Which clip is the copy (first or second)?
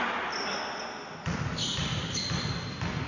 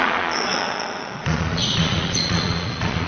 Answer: second